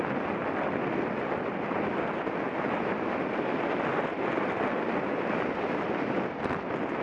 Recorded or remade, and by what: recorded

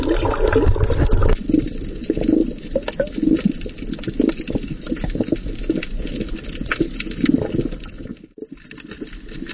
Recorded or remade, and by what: recorded